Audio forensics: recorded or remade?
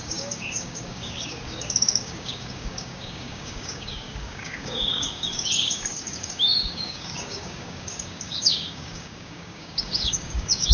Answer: remade